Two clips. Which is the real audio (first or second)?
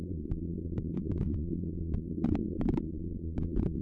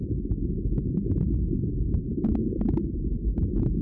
second